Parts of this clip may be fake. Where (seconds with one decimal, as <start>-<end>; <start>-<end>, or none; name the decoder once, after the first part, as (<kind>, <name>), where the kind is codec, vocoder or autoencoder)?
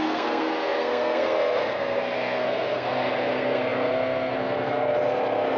0.0-5.6 (codec, SNAC)